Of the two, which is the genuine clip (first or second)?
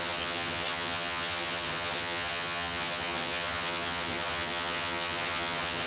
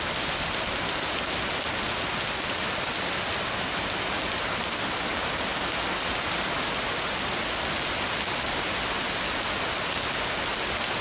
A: second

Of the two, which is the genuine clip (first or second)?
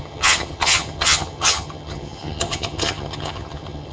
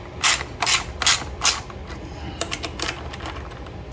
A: second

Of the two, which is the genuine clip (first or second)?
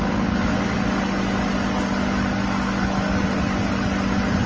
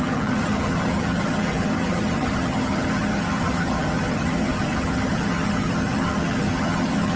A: first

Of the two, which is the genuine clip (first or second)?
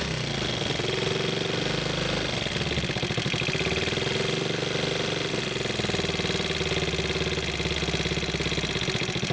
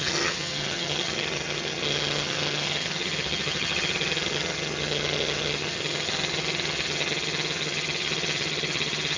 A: first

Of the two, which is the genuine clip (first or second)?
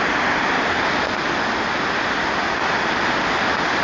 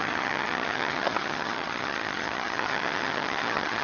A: first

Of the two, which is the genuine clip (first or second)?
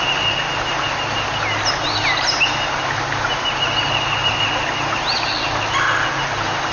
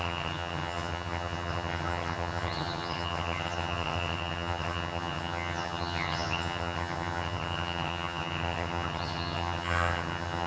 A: first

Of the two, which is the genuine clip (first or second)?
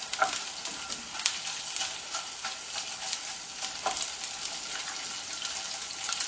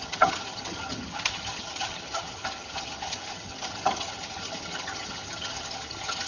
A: first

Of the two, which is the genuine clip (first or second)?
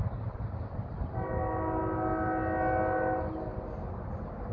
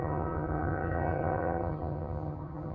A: first